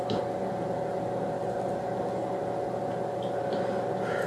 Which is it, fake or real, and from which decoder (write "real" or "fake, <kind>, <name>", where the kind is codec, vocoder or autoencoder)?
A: real